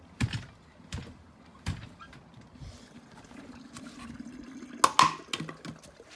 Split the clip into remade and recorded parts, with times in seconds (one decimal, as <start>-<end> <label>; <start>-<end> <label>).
0.0-6.2 recorded